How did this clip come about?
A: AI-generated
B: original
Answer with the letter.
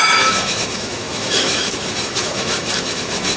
A